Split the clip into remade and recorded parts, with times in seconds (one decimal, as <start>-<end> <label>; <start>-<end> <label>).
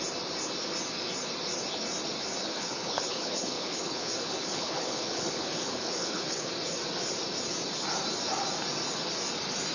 0.0-2.4 recorded; 2.4-6.5 remade; 6.5-9.7 recorded